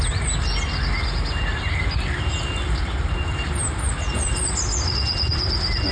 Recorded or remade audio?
recorded